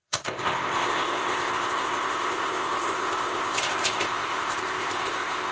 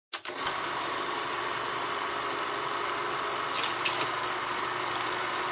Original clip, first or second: second